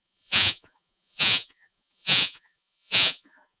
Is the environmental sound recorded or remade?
remade